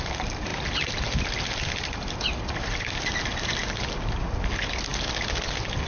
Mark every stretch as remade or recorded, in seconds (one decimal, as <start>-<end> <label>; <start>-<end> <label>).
0.0-5.9 recorded